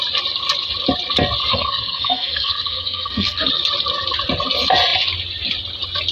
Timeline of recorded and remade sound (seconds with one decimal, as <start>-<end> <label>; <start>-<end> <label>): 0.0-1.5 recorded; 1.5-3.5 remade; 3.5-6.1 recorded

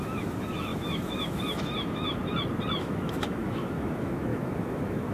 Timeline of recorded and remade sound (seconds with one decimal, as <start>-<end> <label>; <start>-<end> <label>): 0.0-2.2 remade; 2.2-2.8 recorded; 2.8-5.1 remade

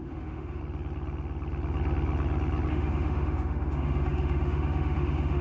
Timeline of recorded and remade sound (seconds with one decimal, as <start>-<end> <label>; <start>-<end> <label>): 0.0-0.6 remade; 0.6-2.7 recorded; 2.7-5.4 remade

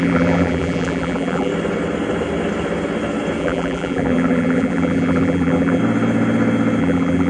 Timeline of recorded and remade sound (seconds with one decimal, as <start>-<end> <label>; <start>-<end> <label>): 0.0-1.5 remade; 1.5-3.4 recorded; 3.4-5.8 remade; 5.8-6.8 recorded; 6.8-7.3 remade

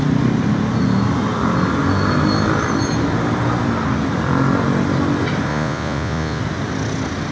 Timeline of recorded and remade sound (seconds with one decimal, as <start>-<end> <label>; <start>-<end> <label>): 0.0-5.5 recorded; 5.5-6.4 remade; 6.4-7.3 recorded

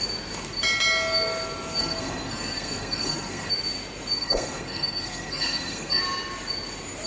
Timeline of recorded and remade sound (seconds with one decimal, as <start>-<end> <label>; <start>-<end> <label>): 0.0-1.8 recorded; 1.8-3.5 remade; 3.5-4.2 recorded; 4.2-6.0 remade; 6.0-7.1 recorded

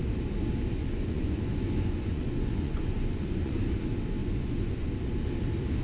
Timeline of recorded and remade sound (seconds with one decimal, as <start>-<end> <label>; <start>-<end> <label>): 0.0-0.8 recorded; 0.8-3.6 remade; 3.6-4.2 recorded; 4.2-4.9 remade; 4.9-5.8 recorded